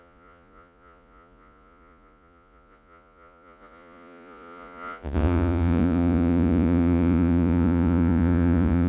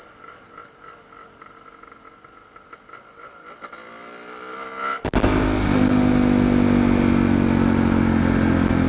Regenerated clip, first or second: first